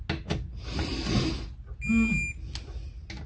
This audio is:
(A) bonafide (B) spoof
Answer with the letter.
A